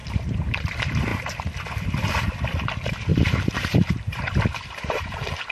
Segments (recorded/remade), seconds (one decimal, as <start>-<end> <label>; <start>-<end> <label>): 0.0-0.6 remade; 0.6-3.1 recorded; 3.1-5.5 remade